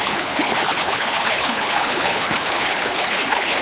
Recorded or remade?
remade